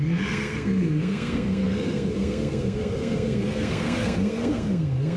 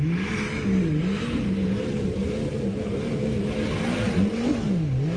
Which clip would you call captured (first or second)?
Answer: second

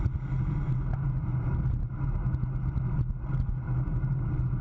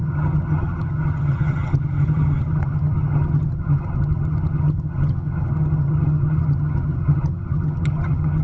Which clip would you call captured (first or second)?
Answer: first